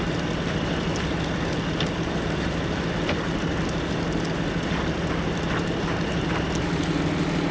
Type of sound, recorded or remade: recorded